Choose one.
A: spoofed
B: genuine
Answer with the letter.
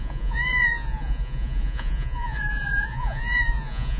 A